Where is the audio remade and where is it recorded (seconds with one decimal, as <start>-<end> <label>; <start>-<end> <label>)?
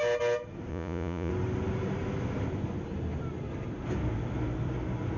0.0-0.7 recorded; 0.7-1.3 remade; 1.3-5.2 recorded